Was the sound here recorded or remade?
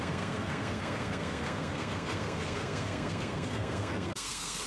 remade